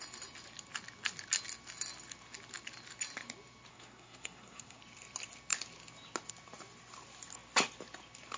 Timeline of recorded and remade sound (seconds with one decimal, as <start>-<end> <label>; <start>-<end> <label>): 0.0-3.7 recorded; 3.7-4.8 remade; 4.8-8.4 recorded